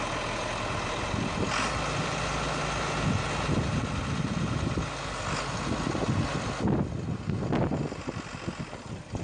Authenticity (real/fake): real